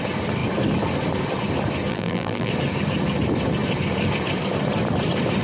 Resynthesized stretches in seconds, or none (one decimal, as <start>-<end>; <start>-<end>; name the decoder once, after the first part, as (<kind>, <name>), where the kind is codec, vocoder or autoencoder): 1.9-2.5 (vocoder, BigVGAN v2)